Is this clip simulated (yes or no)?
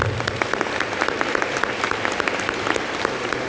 no